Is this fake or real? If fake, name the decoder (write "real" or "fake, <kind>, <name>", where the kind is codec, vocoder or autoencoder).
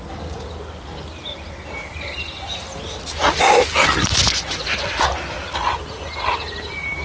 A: real